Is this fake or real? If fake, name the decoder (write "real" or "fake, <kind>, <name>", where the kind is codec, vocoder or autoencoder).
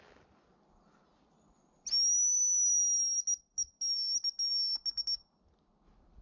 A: real